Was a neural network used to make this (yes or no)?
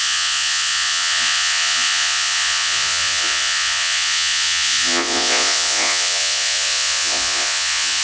yes